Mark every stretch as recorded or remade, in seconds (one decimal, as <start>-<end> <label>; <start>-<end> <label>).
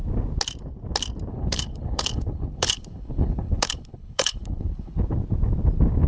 0.0-1.3 recorded; 1.3-5.0 remade; 5.0-6.1 recorded